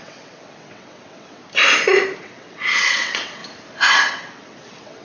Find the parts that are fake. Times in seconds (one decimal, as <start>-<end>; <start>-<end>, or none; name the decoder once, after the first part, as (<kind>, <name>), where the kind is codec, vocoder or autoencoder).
0.0-1.4 (vocoder, WaveNeXt); 2.2-3.4; 3.9-5.0